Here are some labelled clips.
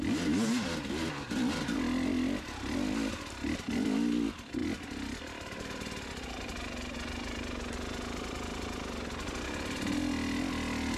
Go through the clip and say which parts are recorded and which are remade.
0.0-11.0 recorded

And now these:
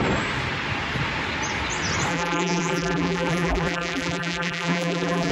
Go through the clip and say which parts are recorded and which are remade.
0.0-2.1 recorded; 2.1-5.3 remade